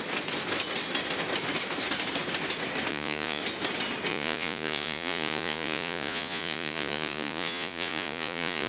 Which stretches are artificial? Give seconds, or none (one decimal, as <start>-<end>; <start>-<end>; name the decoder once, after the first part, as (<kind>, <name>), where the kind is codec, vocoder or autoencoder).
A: 2.9-3.4 (vocoder, Vocos); 4.1-8.7